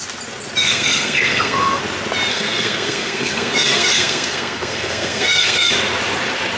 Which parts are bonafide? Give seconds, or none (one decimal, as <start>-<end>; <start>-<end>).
0.0-0.6; 1.8-2.3; 5.7-6.6